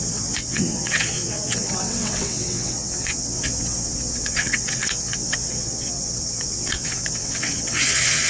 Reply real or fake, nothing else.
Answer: fake